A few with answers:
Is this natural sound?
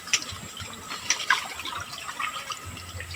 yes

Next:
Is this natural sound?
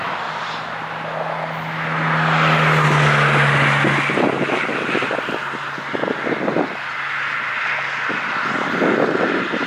yes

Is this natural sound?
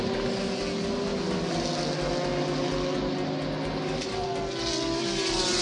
yes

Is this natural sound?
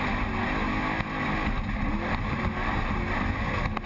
yes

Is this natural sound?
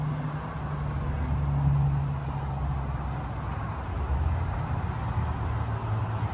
yes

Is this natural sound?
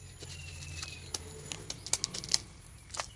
yes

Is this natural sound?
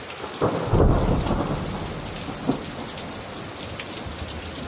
yes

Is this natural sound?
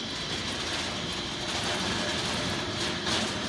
yes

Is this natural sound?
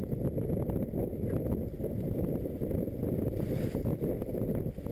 yes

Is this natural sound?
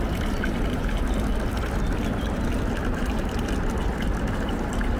yes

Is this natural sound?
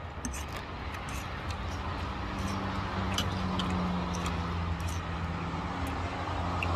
yes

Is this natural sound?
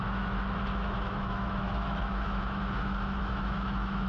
no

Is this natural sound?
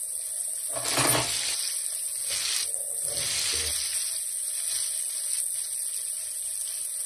yes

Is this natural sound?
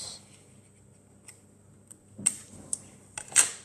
yes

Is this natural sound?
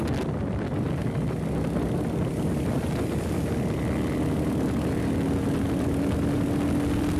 yes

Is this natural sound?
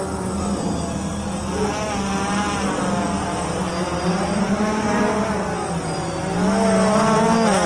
yes